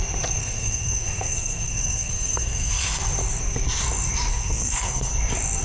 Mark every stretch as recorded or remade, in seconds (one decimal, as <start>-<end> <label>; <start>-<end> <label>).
0.0-0.4 recorded; 0.4-3.0 remade; 3.0-4.3 recorded; 4.3-5.1 remade; 5.1-5.6 recorded